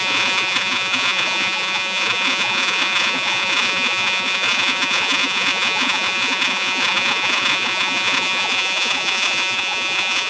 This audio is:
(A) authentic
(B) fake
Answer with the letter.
B